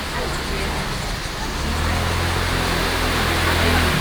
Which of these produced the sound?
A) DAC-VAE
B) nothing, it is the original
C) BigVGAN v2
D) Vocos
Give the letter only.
B